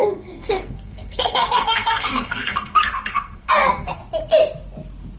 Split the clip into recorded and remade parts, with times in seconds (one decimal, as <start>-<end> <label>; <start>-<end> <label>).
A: 0.0-4.0 remade; 4.0-5.2 recorded